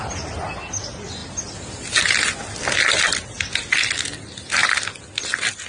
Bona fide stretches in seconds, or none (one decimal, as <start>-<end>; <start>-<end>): 0.0-5.7